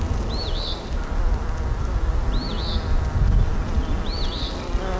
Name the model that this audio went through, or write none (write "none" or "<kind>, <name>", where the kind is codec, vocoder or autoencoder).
none